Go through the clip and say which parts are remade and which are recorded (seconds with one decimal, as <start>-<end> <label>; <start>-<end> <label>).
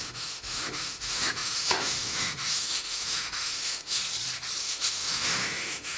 0.0-4.0 remade; 4.0-4.6 recorded; 4.6-6.0 remade